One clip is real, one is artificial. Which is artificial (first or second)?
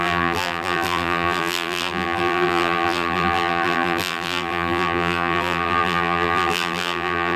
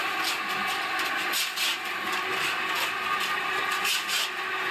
first